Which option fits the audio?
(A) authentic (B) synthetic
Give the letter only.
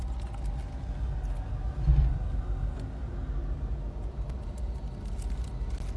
A